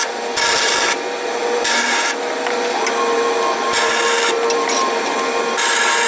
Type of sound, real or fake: real